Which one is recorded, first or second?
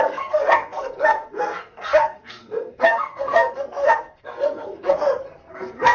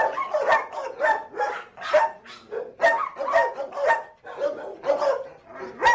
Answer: second